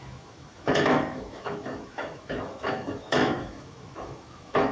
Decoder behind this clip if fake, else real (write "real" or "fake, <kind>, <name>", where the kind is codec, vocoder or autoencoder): fake, autoencoder, DAC-VAE